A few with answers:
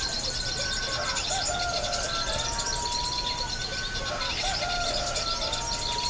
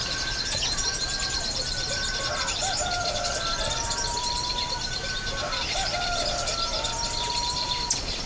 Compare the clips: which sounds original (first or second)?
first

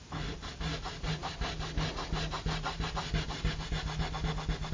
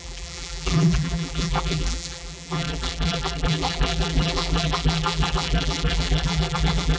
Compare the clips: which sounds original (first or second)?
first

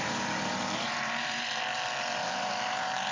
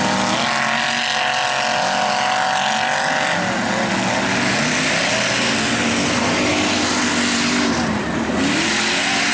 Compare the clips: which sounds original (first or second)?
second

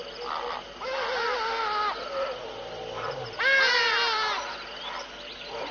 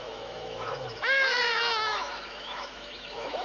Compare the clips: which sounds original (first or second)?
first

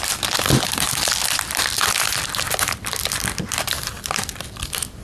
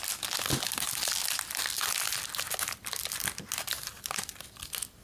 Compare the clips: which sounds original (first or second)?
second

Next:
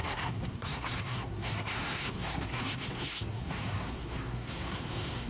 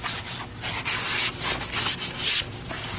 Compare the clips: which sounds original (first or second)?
second